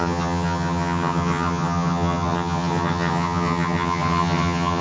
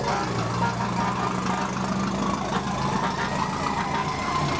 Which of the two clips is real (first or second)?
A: second